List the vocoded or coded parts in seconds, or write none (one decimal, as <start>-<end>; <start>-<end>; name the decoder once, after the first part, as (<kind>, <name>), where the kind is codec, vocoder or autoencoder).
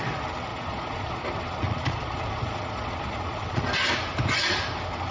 0.5-3.6 (vocoder, Vocos)